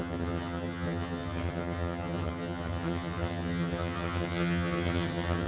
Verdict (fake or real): fake